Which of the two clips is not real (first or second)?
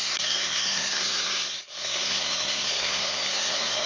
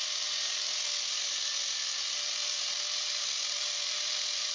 first